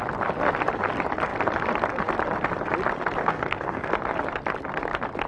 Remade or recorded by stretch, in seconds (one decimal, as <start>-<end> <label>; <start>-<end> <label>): 0.0-3.2 recorded; 3.2-3.9 remade; 3.9-5.3 recorded